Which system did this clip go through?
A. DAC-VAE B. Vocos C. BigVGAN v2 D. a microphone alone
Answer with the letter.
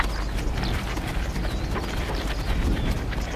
C